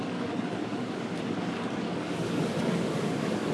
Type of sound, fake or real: fake